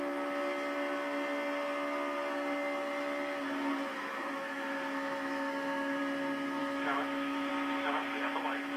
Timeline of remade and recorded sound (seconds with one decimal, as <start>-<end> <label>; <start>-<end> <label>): 0.0-3.9 recorded; 3.9-6.0 remade; 6.0-6.6 recorded; 6.6-7.5 remade; 7.5-8.8 recorded